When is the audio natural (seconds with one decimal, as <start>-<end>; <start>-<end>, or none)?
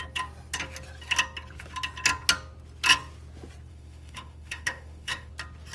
0.0-3.7; 5.3-5.7